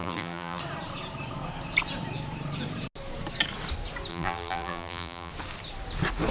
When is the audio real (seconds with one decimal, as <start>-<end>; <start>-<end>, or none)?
0.6-4.1; 5.3-6.3